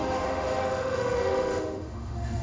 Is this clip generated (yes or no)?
yes